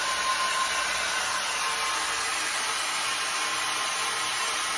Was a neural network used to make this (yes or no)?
no